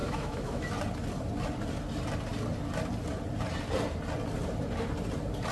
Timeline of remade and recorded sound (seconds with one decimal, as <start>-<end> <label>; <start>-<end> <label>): 0.0-0.7 remade; 0.7-5.5 recorded